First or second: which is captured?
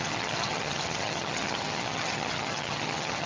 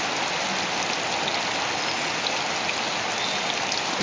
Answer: second